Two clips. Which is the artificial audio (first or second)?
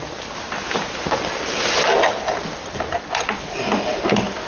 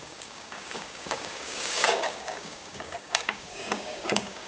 second